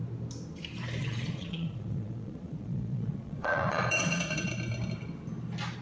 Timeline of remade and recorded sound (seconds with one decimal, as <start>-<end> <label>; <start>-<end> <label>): 0.0-1.0 recorded; 1.0-4.5 remade; 4.5-5.8 recorded